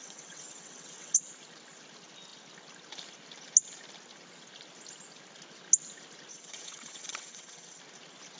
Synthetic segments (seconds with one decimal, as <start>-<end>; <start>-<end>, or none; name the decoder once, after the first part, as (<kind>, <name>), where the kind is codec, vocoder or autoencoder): 0.0-1.2 (vocoder, WaveNeXt); 6.3-7.8